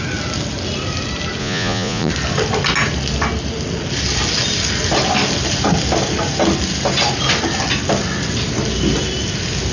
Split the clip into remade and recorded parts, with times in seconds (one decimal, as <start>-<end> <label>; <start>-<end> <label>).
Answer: 0.0-1.4 recorded; 1.4-2.1 remade; 2.1-9.7 recorded